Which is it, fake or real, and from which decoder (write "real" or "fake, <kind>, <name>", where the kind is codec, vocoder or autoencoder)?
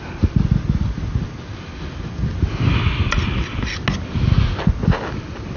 real